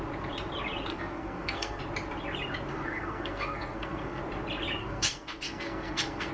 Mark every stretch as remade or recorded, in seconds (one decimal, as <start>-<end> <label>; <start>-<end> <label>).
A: 0.0-0.9 recorded; 0.9-1.8 remade; 1.8-2.7 recorded; 2.7-4.2 remade; 4.2-4.8 recorded; 4.8-6.3 remade